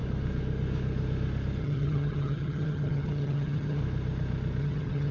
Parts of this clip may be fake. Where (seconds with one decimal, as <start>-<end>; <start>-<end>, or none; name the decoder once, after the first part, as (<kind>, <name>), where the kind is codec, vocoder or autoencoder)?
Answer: 1.6-3.8 (vocoder, HiFi-GAN); 4.6-5.1